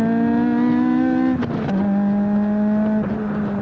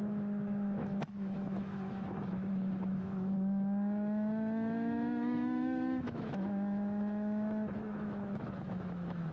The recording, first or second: first